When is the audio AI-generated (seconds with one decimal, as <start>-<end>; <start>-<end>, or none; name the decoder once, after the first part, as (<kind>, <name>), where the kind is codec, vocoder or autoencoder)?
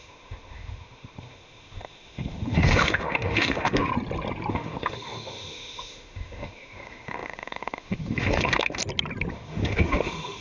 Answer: 0.0-3.9 (autoencoder, DAC-VAE); 4.5-8.8; 9.3-10.4